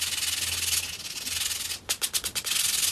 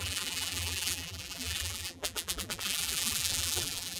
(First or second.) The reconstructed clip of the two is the second